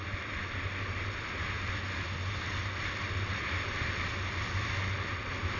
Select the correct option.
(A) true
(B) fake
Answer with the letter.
A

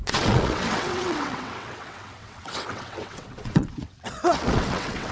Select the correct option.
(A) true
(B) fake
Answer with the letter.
B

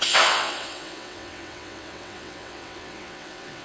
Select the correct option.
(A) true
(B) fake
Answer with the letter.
B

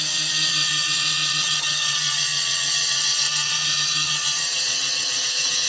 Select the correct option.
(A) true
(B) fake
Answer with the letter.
B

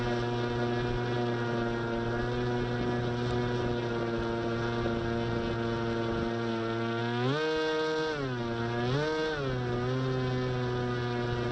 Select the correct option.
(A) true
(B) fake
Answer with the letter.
A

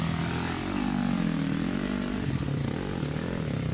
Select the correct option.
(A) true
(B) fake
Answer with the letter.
A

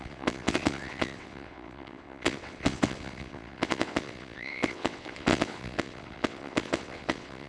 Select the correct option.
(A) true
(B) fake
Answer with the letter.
B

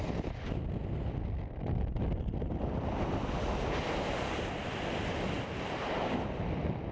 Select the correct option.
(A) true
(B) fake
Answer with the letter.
A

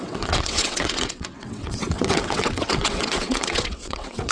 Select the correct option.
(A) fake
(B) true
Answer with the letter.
A